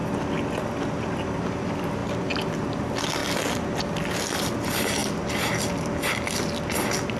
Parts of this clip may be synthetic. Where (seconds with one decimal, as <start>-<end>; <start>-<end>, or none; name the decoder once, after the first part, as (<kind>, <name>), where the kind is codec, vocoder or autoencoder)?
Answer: none